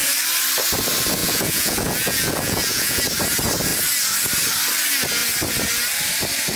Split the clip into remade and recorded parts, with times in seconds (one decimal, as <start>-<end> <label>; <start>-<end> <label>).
0.0-1.2 recorded; 1.2-3.0 remade; 3.0-6.6 recorded